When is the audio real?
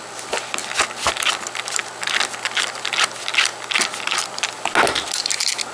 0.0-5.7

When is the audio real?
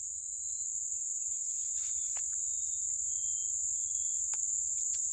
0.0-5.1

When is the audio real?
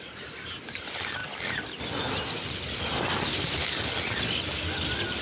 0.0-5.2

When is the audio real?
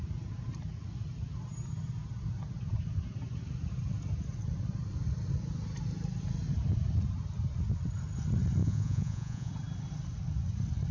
0.0-8.6; 9.5-10.9